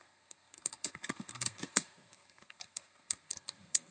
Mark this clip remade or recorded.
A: remade